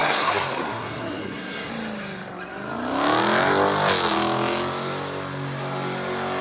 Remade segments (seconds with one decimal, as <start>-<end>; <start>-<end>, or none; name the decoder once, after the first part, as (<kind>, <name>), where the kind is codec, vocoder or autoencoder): 0.0-1.7 (codec, SNAC)

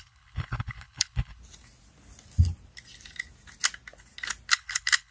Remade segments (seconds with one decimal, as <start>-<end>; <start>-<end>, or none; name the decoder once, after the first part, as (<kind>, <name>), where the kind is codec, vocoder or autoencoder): 0.0-1.4 (codec, HILCodec); 4.5-5.1

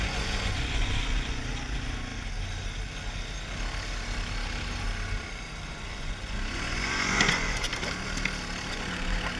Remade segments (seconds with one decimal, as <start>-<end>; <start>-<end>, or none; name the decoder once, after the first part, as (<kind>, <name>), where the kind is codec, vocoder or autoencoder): 0.0-2.1 (vocoder, Vocos); 5.7-7.7; 8.7-9.4

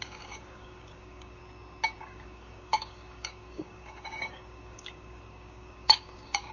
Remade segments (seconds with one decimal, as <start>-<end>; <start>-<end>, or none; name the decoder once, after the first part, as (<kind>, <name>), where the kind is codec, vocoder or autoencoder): 0.0-1.4 (codec, DAC); 2.0-6.5